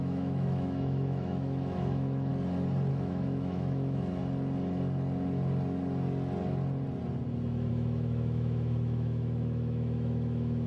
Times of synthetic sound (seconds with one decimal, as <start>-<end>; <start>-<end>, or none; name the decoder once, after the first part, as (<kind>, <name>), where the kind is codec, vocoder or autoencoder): 0.0-2.3 (autoencoder, DAC-VAE); 2.9-4.2; 7.7-10.7